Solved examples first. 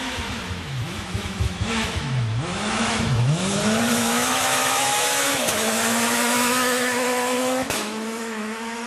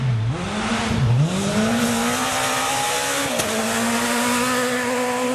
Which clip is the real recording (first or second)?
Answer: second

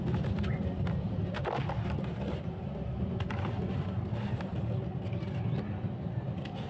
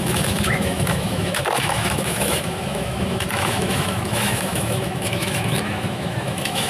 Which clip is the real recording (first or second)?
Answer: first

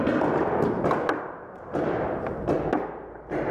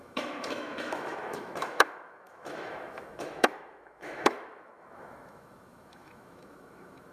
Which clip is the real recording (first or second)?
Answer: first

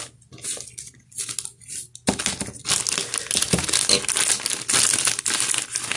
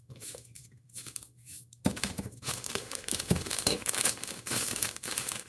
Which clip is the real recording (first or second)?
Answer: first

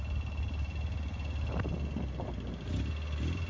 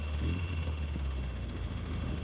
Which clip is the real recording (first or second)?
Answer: first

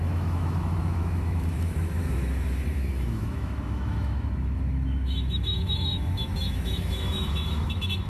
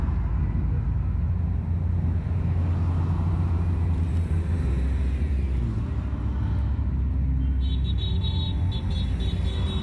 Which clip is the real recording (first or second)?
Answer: second